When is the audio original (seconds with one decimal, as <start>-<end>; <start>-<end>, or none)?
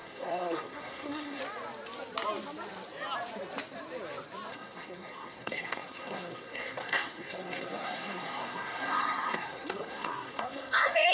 1.4-4.5